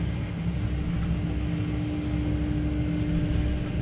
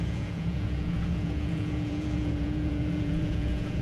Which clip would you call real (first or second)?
first